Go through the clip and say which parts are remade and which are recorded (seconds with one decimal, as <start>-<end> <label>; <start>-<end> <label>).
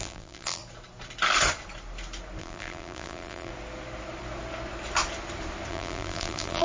0.0-0.6 remade; 0.6-2.4 recorded; 2.4-3.5 remade; 3.5-5.7 recorded; 5.7-6.6 remade